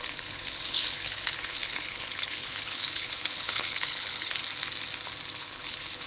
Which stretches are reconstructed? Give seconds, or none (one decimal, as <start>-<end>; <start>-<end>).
0.0-4.4; 5.4-6.1

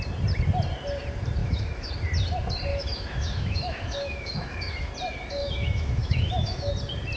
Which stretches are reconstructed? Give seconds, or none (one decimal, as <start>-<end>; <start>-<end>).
1.4-1.9; 2.7-4.9; 5.4-6.7